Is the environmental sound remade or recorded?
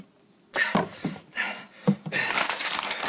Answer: recorded